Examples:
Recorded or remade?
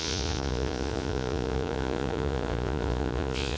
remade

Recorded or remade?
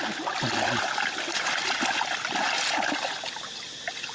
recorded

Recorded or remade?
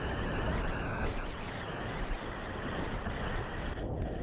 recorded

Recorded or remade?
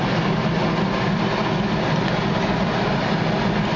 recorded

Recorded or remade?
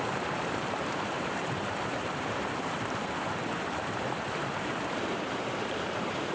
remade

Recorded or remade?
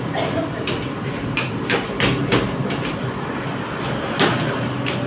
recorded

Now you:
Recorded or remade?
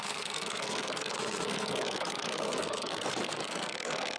remade